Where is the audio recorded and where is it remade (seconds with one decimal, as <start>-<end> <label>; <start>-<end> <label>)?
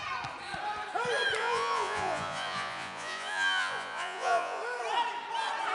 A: 0.0-1.4 recorded; 1.4-4.6 remade; 4.6-5.7 recorded